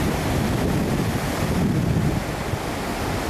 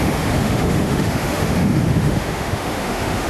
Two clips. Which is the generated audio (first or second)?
second